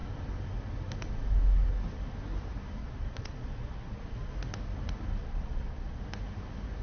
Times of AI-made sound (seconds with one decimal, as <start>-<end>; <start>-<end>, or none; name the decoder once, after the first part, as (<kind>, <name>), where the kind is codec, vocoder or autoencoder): 2.8-4.3 (vocoder, Vocos); 5.2-6.0